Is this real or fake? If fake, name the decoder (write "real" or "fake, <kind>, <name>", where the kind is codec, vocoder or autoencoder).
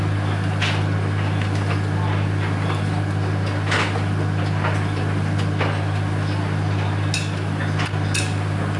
real